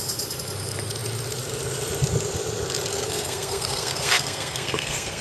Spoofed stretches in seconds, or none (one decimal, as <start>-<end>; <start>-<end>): 2.9-5.2